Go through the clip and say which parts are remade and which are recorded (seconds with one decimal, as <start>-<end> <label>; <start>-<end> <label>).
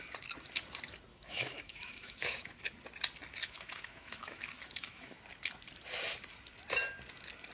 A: 0.0-1.1 recorded; 1.1-2.6 remade; 2.6-3.4 recorded; 3.4-5.2 remade; 5.2-7.5 recorded